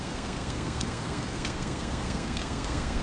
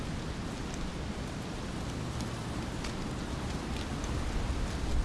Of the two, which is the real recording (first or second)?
second